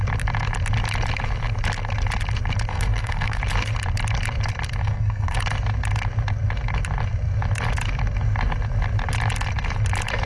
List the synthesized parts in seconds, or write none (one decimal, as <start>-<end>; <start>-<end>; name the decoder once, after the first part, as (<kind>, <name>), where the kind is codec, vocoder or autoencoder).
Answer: 2.7-3.4 (codec, SNAC); 4.8-5.4

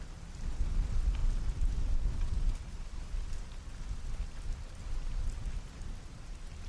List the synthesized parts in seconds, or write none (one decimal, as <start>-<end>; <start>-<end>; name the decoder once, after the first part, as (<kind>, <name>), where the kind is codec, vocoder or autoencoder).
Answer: none

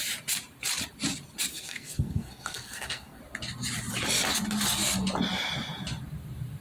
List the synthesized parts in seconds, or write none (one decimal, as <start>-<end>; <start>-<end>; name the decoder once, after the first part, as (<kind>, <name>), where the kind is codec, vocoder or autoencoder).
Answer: 1.5-3.2 (codec, SNAC)